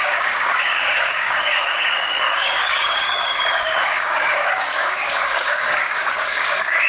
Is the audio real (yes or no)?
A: no